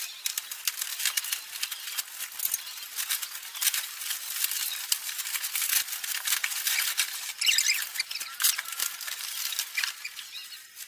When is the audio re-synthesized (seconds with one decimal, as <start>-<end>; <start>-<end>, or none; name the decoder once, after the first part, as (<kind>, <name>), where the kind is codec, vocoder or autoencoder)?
none